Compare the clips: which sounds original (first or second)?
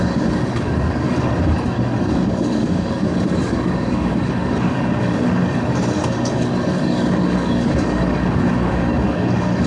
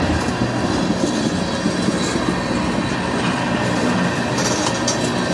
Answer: second